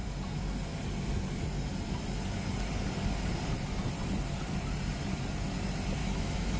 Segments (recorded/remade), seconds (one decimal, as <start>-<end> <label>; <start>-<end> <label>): 0.0-6.0 recorded; 6.0-6.6 remade